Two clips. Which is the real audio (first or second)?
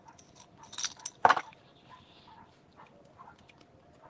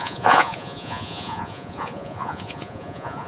first